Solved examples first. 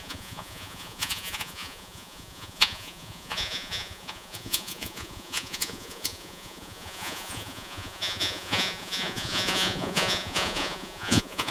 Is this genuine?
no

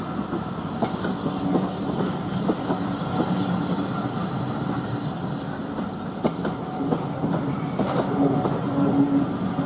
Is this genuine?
yes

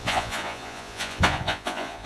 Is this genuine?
no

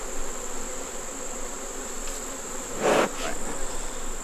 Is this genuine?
yes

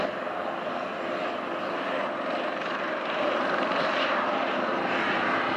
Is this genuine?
yes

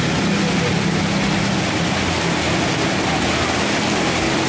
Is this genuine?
yes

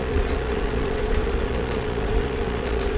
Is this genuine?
no